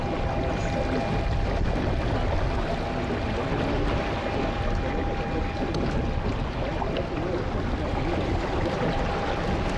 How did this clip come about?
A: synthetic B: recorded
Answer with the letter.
B